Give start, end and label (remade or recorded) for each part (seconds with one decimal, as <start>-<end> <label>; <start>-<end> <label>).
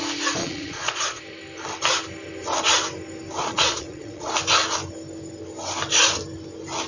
0.0-0.4 recorded; 0.4-1.2 remade; 1.2-3.4 recorded; 3.4-4.3 remade; 4.3-6.9 recorded